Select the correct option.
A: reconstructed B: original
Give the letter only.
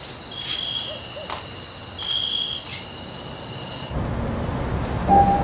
B